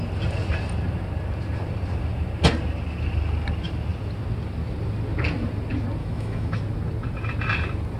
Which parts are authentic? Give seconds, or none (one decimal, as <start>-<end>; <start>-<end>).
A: 0.0-6.0; 6.6-8.0